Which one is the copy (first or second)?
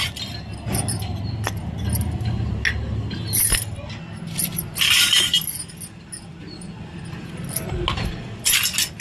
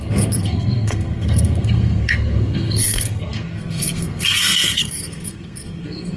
second